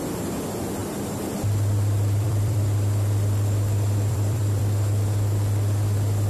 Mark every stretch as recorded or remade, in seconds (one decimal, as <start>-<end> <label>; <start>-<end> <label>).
0.0-0.8 recorded; 0.8-4.6 remade; 4.6-6.3 recorded